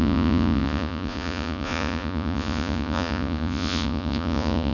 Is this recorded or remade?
remade